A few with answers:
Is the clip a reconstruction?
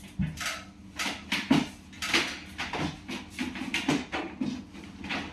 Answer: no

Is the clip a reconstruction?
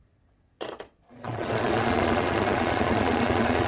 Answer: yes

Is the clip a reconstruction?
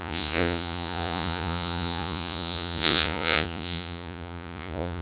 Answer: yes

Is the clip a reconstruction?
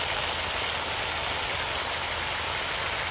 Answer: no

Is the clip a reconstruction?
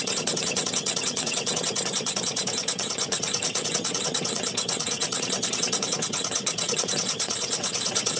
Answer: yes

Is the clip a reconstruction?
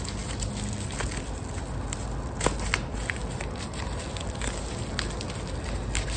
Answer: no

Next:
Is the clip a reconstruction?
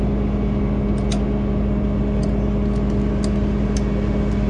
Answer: no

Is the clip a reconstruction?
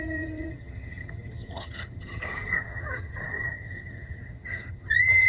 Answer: yes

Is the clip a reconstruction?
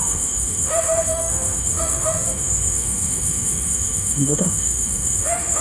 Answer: yes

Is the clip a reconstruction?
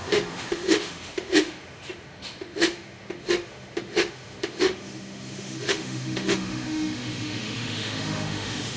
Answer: yes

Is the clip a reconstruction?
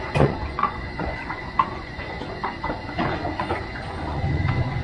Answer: yes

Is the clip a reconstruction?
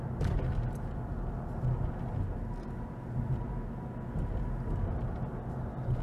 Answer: no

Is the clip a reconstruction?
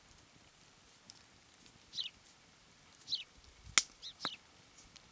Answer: no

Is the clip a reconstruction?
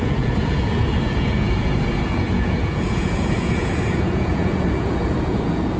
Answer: yes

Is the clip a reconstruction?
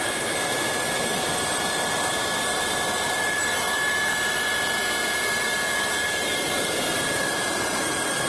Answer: yes